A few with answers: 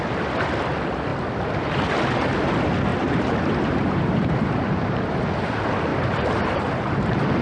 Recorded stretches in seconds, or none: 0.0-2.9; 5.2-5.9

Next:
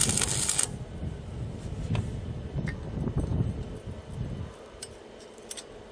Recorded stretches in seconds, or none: 0.0-5.9